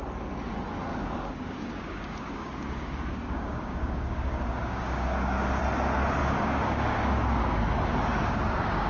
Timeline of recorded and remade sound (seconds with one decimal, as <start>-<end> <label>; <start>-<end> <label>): 0.0-0.9 recorded; 0.9-5.6 remade; 5.6-6.2 recorded; 6.2-7.6 remade; 7.6-8.2 recorded; 8.2-8.9 remade